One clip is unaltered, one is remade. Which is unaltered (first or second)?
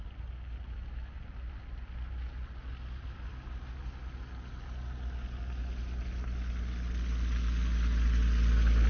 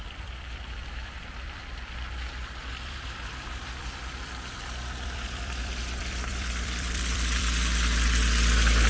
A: first